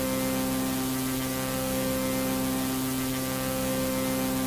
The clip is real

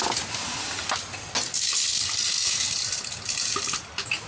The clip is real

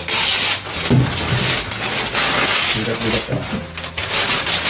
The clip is real